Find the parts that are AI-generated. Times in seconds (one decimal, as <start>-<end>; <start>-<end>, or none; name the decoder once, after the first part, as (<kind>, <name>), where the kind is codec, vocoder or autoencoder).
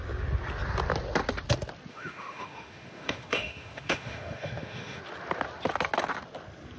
1.9-5.0 (autoencoder, DAC-VAE)